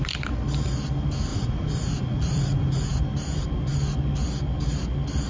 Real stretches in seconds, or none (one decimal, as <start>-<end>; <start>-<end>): 0.0-1.3; 3.0-5.3